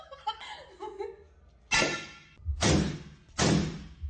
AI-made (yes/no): no